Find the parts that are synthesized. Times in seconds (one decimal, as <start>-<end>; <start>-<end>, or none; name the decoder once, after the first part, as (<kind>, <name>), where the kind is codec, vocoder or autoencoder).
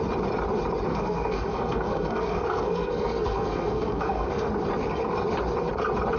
0.9-4.5 (codec, SNAC)